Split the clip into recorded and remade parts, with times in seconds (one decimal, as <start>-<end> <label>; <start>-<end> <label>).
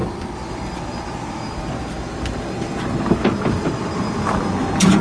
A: 0.0-5.0 recorded